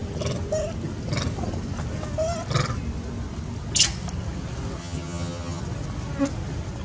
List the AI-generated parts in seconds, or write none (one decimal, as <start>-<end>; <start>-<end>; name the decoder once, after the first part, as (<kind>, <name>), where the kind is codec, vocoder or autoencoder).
4.8-5.6 (vocoder, HiFi-GAN)